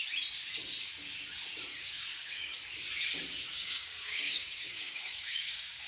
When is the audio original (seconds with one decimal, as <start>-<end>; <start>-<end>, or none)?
0.0-1.7; 2.6-3.5